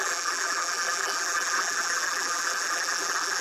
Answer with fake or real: fake